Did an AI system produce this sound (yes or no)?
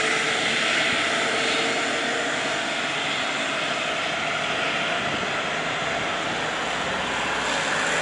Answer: no